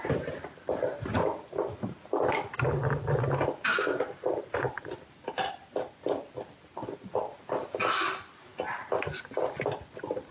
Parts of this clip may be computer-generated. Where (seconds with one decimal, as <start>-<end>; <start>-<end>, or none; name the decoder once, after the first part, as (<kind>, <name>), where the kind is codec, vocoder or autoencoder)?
none